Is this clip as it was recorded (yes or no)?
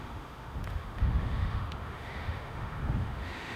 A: no